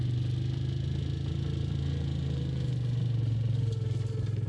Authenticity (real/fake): real